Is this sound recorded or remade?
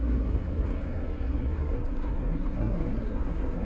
remade